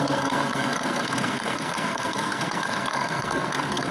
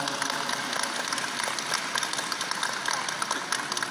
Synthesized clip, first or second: first